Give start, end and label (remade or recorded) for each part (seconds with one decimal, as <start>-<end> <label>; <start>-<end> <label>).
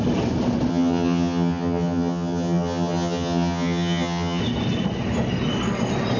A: 0.0-0.7 recorded; 0.7-4.4 remade; 4.4-6.2 recorded